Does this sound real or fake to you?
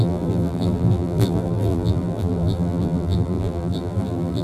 fake